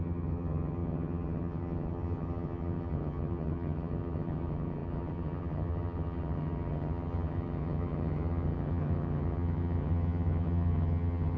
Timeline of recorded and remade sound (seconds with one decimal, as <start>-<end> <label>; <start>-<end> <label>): 0.0-11.4 remade